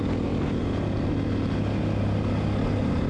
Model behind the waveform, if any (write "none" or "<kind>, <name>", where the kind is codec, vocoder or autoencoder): none